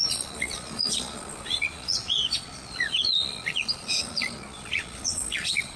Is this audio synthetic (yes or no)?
yes